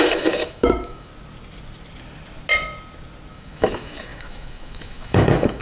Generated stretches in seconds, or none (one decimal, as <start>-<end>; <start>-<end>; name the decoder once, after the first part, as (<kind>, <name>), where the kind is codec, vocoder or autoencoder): 0.0-1.1 (autoencoder, DAC-VAE); 3.3-5.6